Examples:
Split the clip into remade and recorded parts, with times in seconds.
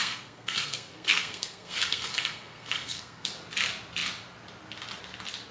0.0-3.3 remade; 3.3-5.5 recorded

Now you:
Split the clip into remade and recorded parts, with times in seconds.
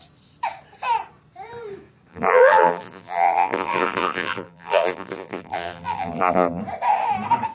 0.0-2.1 recorded; 2.1-6.6 remade; 6.6-7.5 recorded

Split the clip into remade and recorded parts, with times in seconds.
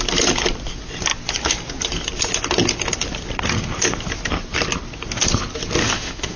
0.0-5.8 recorded; 5.8-6.4 remade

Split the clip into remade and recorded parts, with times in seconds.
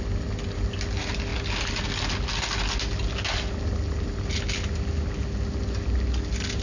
0.0-6.6 recorded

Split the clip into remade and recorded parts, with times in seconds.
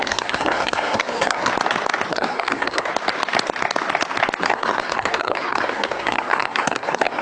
0.0-1.5 remade; 1.5-2.1 recorded; 2.1-2.9 remade; 2.9-4.4 recorded; 4.4-7.2 remade